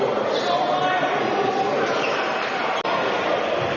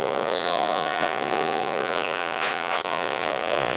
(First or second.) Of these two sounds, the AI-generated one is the second